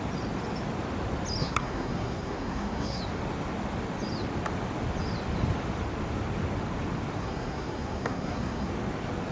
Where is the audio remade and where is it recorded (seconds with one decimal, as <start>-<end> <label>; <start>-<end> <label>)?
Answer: 0.0-1.4 recorded; 1.4-3.0 remade; 3.0-7.2 recorded; 7.2-8.7 remade; 8.7-9.3 recorded